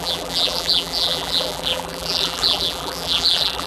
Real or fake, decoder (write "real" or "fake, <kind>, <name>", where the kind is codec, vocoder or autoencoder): fake, vocoder, BigVGAN v2